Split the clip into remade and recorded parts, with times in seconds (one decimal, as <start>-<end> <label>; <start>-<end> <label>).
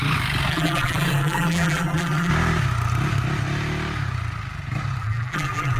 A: 0.0-0.5 recorded; 0.5-2.3 remade; 2.3-5.0 recorded; 5.0-5.8 remade